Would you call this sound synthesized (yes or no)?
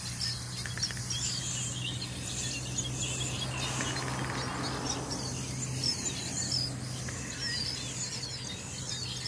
no